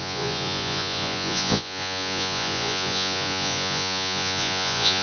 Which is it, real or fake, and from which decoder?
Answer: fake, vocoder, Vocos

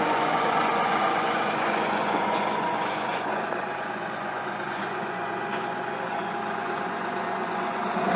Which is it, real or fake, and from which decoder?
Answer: fake, vocoder, Vocos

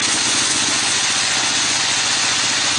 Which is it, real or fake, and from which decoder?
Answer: fake, vocoder, Vocos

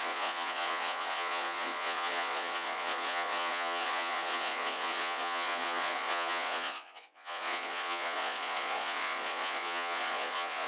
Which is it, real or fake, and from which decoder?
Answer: fake, vocoder, Vocos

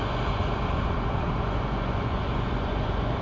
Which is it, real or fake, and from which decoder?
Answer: fake, vocoder, Vocos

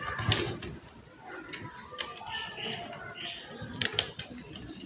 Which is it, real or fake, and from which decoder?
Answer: real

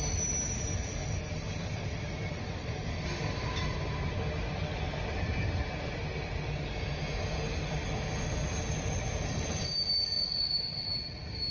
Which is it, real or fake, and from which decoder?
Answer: real